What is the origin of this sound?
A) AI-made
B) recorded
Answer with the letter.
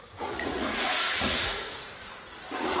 A